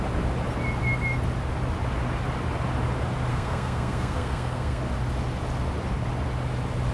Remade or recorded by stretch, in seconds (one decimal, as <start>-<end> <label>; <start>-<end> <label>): 0.0-3.3 recorded; 3.3-4.8 remade; 4.8-6.9 recorded